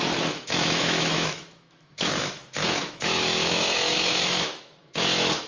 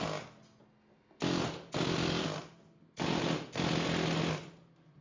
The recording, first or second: second